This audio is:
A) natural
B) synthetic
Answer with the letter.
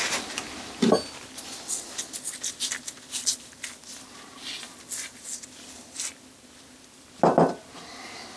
A